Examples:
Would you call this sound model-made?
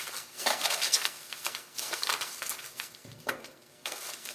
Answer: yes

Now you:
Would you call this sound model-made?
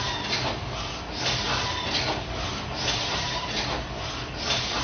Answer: no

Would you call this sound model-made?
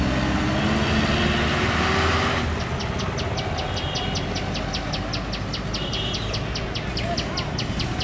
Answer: no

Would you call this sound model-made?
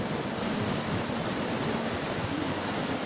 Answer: yes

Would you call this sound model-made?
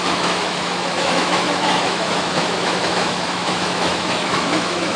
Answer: yes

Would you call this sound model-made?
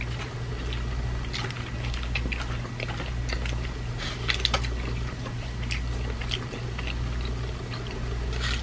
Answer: no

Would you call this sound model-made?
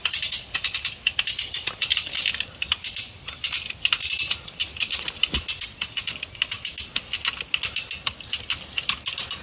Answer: no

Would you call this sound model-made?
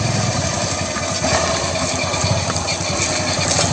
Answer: no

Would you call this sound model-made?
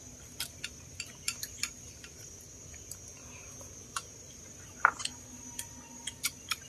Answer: yes